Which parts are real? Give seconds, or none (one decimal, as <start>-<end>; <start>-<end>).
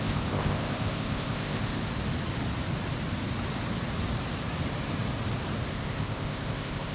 1.8-5.7